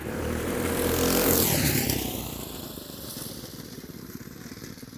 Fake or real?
fake